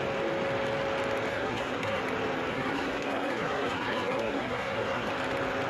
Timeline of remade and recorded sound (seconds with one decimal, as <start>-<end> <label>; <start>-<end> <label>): 0.0-1.3 recorded; 1.3-2.0 remade; 2.0-2.5 recorded; 2.5-5.1 remade; 5.1-5.7 recorded